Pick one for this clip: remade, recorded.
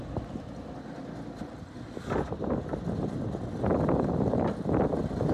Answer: recorded